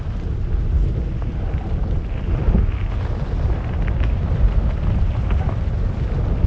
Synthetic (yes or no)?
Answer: no